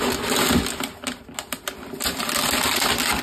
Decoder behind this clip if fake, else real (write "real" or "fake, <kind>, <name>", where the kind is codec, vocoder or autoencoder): real